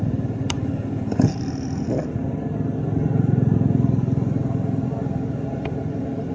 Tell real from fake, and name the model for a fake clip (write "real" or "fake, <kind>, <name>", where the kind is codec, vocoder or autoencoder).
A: real